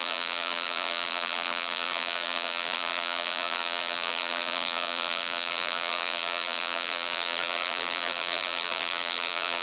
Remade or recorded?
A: remade